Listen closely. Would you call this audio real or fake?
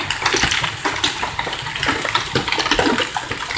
real